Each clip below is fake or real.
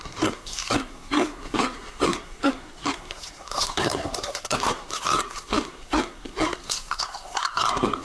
fake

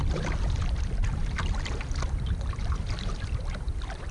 real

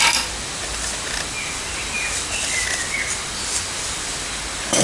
real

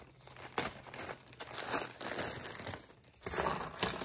real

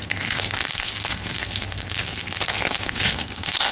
fake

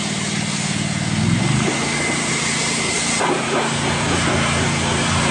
real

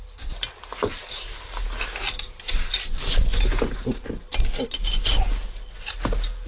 real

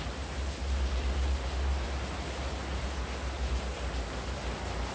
real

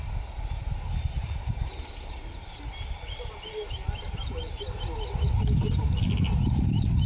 real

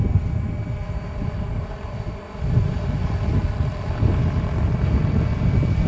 real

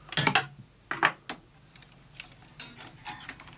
real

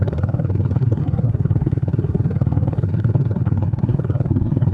fake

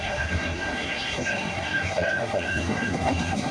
fake